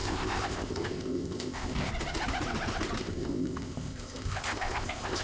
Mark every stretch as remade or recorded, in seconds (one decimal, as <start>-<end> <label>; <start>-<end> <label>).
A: 0.0-1.9 remade; 1.9-3.0 recorded; 3.0-5.2 remade